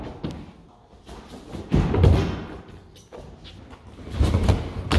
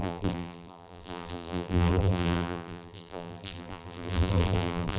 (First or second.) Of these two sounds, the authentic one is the first